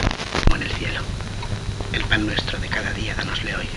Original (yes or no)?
yes